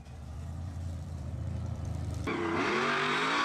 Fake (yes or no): yes